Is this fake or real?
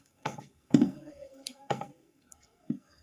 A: fake